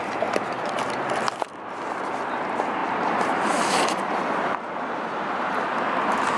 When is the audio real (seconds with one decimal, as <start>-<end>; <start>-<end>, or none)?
0.0-2.8; 5.7-6.4